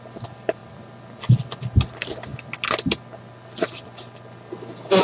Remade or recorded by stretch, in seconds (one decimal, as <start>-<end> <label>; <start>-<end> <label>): 0.0-5.0 recorded